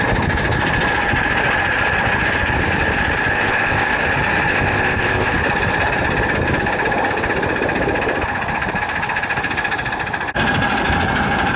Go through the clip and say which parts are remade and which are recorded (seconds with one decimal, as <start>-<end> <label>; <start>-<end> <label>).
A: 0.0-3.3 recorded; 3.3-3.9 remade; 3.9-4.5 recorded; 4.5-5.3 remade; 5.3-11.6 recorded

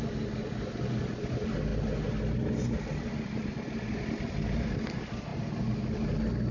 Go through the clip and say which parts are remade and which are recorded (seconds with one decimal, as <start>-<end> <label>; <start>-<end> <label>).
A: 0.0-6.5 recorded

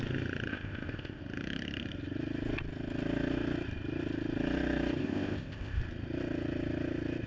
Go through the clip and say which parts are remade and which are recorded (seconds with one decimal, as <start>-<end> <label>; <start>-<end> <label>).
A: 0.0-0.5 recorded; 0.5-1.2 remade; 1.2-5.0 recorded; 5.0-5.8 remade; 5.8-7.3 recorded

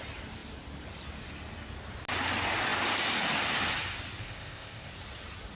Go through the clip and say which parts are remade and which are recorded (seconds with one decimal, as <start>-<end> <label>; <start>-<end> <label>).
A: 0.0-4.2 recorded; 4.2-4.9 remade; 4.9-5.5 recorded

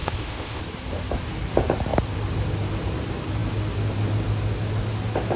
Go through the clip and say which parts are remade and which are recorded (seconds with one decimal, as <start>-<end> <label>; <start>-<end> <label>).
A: 0.0-0.6 remade; 0.6-5.4 recorded